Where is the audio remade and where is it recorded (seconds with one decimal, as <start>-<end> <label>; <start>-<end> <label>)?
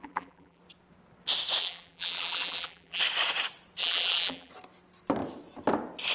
0.0-0.6 remade; 0.6-1.6 recorded; 1.6-3.0 remade; 3.0-3.8 recorded; 3.8-4.5 remade; 4.5-6.1 recorded